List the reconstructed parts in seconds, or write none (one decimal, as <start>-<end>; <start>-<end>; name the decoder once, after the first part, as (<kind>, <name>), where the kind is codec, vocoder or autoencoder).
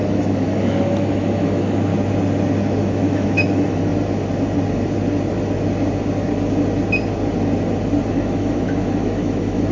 0.0-1.9 (autoencoder, DAC-VAE); 2.8-3.9; 8.1-9.7